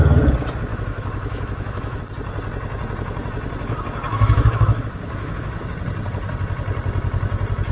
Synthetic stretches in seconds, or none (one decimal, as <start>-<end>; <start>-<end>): 0.7-2.0; 4.1-5.8